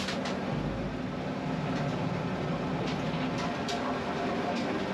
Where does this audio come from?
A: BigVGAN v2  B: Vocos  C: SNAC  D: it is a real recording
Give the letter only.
D